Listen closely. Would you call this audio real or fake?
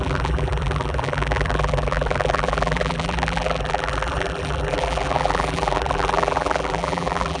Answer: fake